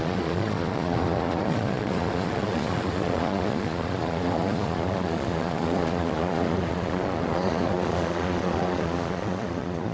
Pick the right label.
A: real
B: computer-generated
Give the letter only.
B